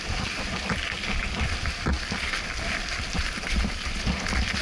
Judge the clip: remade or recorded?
recorded